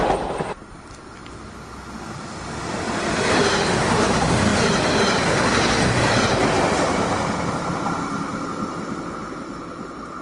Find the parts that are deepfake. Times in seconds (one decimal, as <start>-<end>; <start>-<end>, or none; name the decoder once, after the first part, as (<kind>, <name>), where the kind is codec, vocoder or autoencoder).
none